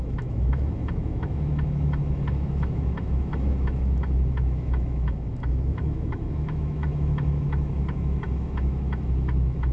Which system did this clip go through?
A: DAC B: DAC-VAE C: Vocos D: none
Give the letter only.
B